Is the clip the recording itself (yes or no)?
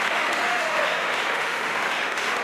no